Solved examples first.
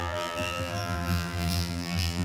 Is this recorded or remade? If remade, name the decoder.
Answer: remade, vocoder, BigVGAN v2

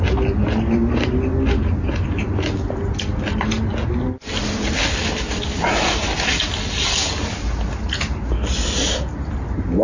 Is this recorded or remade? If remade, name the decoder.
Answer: recorded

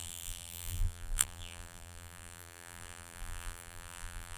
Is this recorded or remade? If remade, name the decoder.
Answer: remade, vocoder, BigVGAN v2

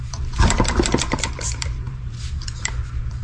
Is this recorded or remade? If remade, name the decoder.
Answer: remade, vocoder, BigVGAN v2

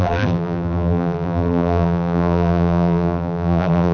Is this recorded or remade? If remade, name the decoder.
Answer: remade, vocoder, BigVGAN v2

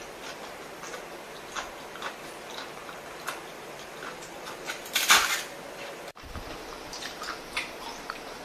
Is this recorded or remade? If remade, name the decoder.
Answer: remade, vocoder, BigVGAN v2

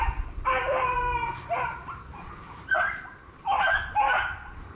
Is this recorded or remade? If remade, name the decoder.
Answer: recorded